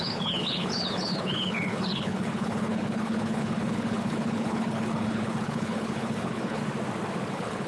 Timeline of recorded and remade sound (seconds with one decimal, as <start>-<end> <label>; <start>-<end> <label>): 0.0-6.6 remade; 6.6-7.3 recorded; 7.3-7.7 remade